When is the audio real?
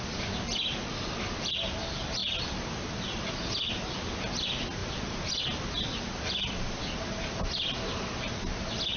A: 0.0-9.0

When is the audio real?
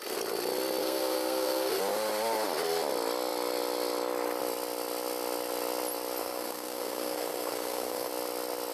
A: 0.0-0.8; 1.8-6.2; 8.1-8.7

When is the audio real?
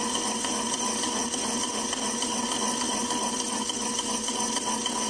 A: 0.0-5.1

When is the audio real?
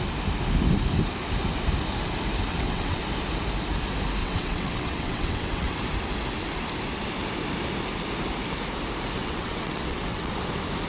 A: 0.0-2.5; 3.0-4.2; 5.7-9.2; 10.3-10.9